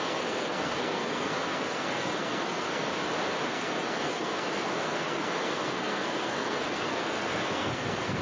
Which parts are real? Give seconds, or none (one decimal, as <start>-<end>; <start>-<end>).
2.9-3.5